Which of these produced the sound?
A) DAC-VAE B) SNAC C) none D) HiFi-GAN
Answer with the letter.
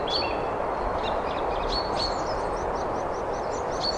C